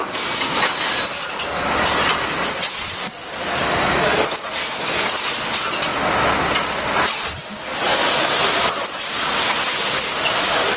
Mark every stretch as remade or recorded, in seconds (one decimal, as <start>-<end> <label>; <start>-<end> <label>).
0.0-10.8 recorded